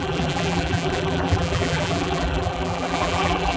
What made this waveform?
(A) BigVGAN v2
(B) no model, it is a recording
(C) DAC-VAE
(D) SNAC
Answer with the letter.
A